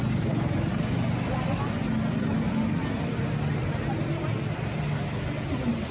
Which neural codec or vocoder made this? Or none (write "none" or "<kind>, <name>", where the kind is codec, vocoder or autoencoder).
none